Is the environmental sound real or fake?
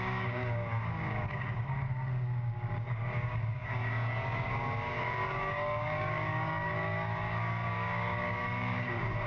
fake